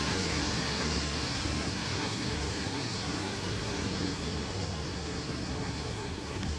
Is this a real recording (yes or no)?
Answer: no